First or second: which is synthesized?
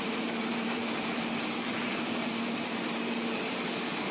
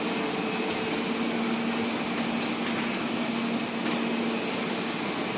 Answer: first